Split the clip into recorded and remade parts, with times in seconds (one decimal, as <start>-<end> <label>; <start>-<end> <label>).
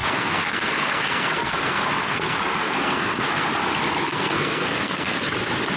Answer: 0.0-3.5 remade; 3.5-4.1 recorded; 4.1-5.2 remade; 5.2-5.8 recorded